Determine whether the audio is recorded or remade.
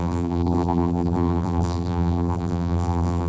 remade